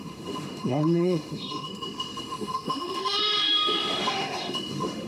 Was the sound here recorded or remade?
remade